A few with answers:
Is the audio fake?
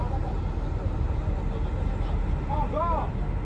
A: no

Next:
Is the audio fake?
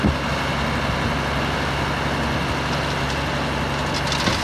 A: no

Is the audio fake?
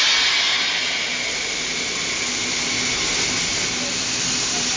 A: no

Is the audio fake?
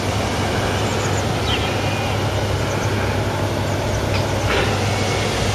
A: no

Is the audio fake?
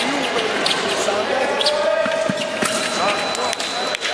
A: no